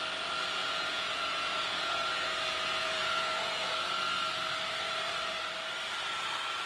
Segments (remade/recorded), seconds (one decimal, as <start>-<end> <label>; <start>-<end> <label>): 0.0-0.6 recorded; 0.6-3.7 remade; 3.7-6.7 recorded